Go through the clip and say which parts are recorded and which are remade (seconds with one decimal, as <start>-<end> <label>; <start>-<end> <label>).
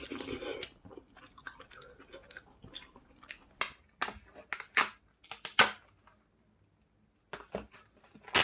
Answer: 0.0-8.4 recorded